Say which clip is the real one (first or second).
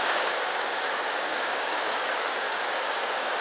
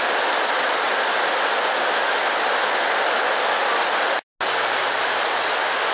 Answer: second